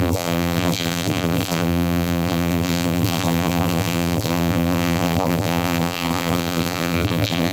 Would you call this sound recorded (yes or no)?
no